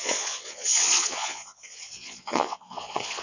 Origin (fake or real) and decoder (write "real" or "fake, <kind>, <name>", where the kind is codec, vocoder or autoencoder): fake, vocoder, Vocos